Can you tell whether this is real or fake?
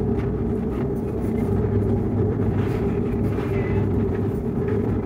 fake